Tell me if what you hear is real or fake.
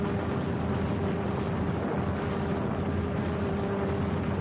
real